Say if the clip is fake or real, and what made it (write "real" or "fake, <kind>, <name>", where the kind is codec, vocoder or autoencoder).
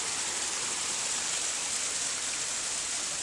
real